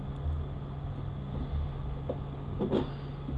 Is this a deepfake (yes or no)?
no